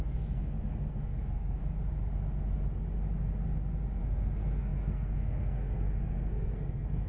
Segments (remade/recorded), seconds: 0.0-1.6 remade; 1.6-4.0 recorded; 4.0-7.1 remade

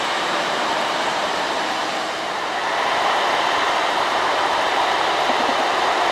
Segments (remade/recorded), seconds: 0.0-6.1 remade

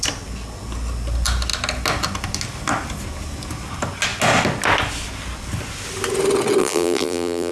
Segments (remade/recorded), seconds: 0.0-6.6 recorded; 6.6-7.5 remade

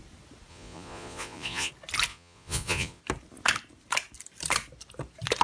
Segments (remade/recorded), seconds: 0.0-0.5 recorded; 0.5-1.7 remade; 1.7-2.1 recorded; 2.1-3.0 remade; 3.0-5.4 recorded

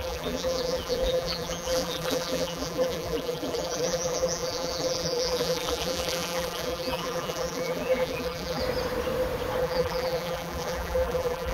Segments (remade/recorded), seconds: 0.0-8.6 remade; 8.6-9.6 recorded; 9.6-11.5 remade

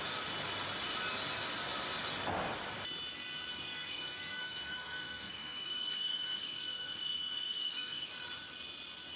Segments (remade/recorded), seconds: 0.0-3.5 recorded; 3.5-8.1 remade; 8.1-9.2 recorded

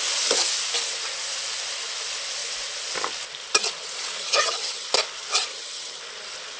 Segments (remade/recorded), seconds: 0.0-4.2 recorded; 4.2-4.9 remade; 4.9-5.5 recorded; 5.5-6.0 remade; 6.0-6.6 recorded

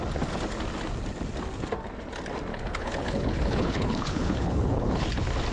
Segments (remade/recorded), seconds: 0.0-2.5 recorded; 2.5-5.1 remade; 5.1-5.5 recorded